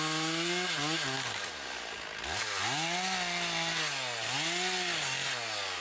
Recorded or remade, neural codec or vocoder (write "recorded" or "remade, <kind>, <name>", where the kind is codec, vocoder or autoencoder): recorded